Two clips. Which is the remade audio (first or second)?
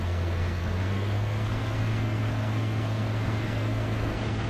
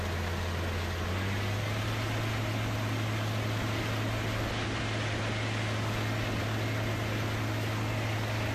first